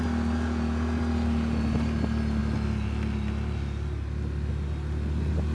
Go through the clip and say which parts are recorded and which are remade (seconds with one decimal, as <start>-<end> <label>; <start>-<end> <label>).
0.0-5.5 recorded